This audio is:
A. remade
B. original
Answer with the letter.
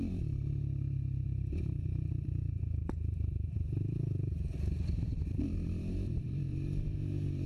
A